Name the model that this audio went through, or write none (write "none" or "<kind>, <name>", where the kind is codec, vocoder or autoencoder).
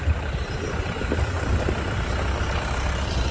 none